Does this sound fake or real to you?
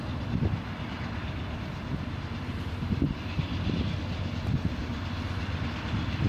real